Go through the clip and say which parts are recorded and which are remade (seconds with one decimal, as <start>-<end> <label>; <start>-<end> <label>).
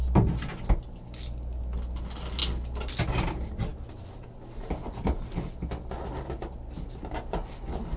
0.0-8.0 recorded